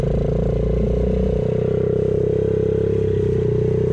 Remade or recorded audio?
recorded